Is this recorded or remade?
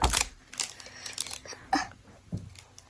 recorded